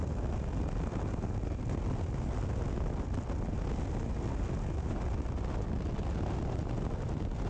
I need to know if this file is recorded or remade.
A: recorded